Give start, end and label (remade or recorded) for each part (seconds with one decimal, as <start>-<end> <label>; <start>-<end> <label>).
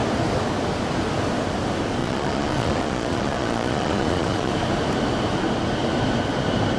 0.0-2.0 recorded; 2.0-4.5 remade; 4.5-6.8 recorded